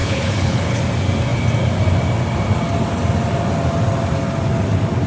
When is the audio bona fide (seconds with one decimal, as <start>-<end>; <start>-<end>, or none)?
0.8-5.1